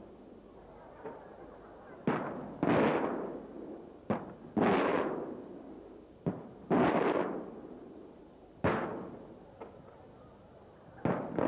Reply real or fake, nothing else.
real